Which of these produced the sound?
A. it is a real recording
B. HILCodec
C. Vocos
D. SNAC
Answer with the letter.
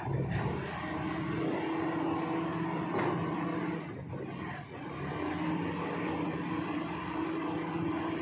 A